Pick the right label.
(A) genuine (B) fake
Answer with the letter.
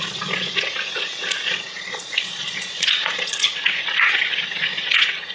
B